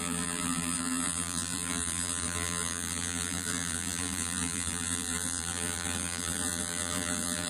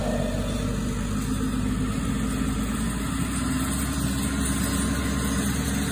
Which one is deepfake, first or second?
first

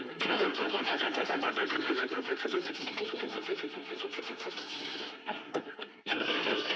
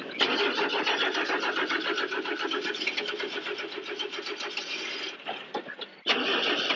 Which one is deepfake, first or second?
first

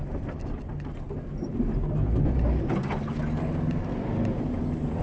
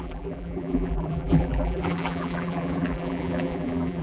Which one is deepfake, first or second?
second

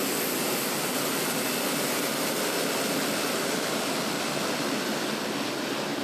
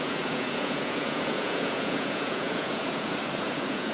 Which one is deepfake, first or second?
second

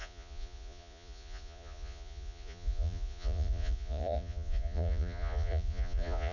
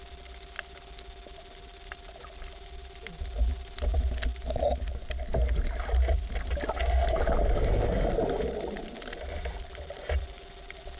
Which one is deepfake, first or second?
first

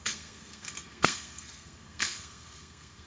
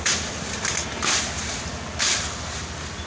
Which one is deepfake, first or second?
first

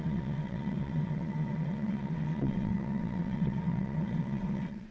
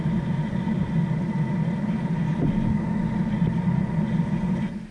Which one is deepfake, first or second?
first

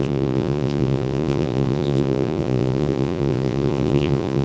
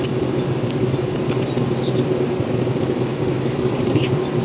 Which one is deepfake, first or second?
first